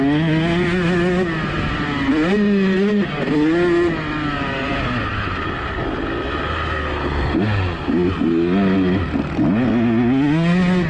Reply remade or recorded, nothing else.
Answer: recorded